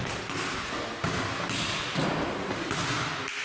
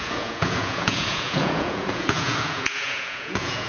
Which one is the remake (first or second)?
second